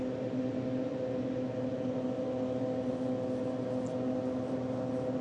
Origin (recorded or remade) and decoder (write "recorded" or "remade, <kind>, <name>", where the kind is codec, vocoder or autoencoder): recorded